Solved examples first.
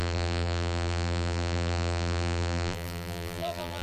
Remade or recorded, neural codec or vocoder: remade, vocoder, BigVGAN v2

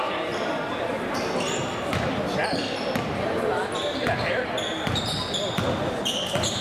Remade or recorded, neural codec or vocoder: recorded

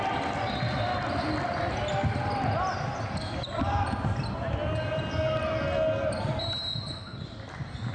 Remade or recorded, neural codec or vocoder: recorded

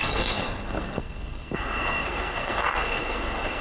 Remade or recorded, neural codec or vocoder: remade, codec, SNAC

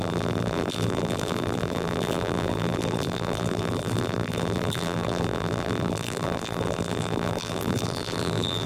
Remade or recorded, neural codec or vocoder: remade, vocoder, BigVGAN v2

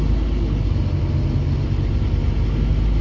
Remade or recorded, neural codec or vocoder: recorded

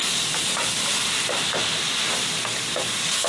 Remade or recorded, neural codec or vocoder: recorded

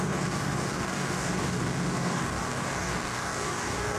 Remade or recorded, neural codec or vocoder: remade, codec, DAC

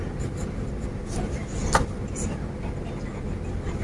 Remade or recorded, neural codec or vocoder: recorded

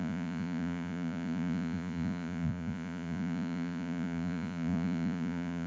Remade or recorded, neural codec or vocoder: remade, vocoder, Vocos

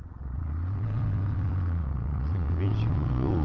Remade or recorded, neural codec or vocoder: remade, vocoder, Vocos